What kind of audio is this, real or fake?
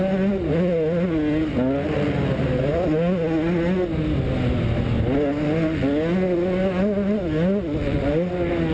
real